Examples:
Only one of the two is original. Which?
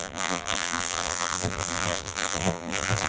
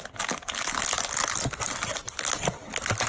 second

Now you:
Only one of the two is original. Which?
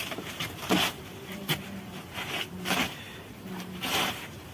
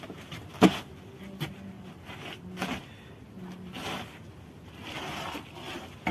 second